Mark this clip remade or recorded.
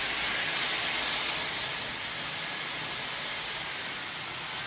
recorded